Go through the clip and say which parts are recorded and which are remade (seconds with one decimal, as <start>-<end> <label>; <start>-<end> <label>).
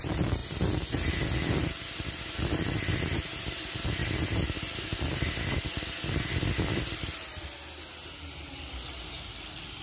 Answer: 0.0-9.8 recorded